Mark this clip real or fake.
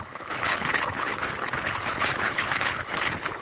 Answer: fake